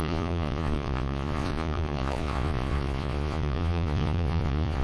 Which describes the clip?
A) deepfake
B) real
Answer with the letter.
A